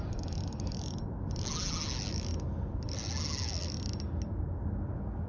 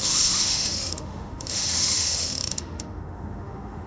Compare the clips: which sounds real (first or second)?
first